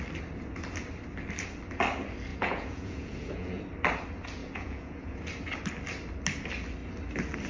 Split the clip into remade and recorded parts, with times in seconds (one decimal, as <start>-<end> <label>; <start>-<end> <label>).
0.0-2.3 recorded; 2.3-3.6 remade; 3.6-4.4 recorded; 4.4-5.2 remade; 5.2-7.5 recorded